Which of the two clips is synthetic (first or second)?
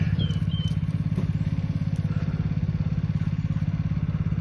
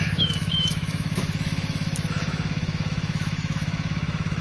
second